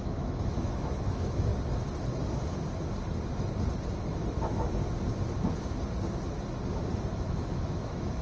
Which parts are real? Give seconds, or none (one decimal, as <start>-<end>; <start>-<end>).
1.5-4.0; 4.8-7.1